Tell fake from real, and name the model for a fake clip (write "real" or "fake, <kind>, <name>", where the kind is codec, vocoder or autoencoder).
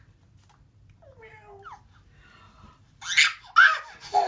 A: real